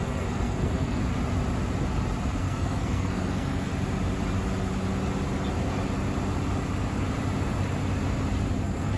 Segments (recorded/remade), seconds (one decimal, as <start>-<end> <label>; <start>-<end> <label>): 0.0-1.0 remade; 1.0-2.4 recorded; 2.4-3.7 remade; 3.7-8.6 recorded; 8.6-9.0 remade